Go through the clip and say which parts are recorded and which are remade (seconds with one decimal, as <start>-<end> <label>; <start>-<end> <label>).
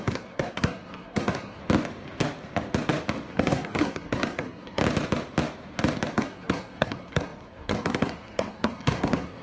0.0-1.6 remade; 1.6-3.3 recorded; 3.3-4.8 remade; 4.8-6.1 recorded; 6.1-9.4 remade